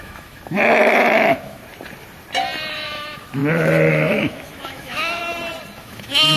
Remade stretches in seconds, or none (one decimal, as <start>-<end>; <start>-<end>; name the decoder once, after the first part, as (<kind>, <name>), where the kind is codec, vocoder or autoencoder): 0.0-1.6 (autoencoder, DAC-VAE); 2.7-3.4; 3.9-5.2; 5.8-6.4